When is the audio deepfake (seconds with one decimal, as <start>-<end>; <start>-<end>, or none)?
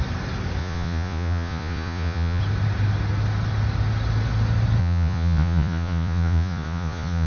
0.6-2.4; 4.8-7.3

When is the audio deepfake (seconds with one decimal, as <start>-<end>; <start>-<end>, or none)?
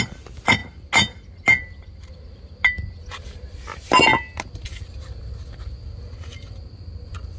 none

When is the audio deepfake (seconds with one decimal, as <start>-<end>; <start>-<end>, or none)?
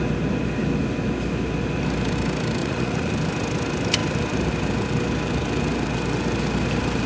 2.6-3.1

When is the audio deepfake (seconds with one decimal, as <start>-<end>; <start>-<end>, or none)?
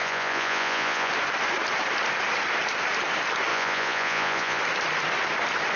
0.0-1.1; 3.5-4.6